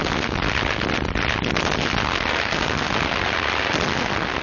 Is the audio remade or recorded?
recorded